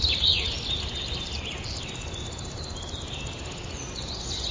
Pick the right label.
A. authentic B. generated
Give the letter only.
A